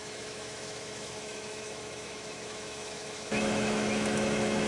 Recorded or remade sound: remade